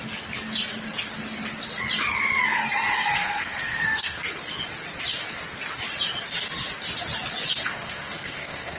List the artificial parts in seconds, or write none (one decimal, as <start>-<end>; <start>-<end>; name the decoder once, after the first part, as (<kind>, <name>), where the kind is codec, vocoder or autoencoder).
3.2-4.2 (codec, SNAC); 7.7-8.8